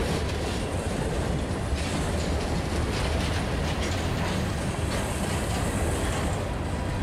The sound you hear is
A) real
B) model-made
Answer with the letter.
A